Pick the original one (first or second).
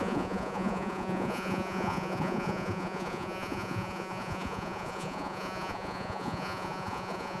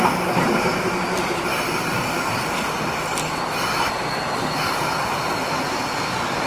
second